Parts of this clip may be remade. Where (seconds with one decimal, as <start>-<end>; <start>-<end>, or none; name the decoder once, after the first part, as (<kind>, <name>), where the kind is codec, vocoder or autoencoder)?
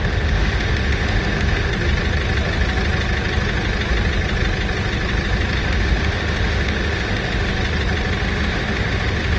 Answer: 0.0-1.7 (autoencoder, DAC-VAE); 5.6-7.5; 8.2-9.4